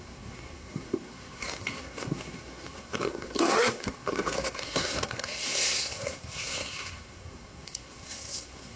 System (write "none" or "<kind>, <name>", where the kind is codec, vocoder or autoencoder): codec, SNAC